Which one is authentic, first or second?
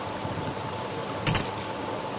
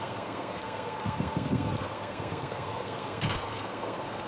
first